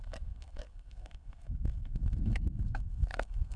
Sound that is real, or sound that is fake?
fake